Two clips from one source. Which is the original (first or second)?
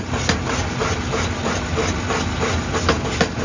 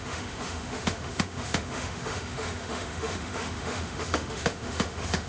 first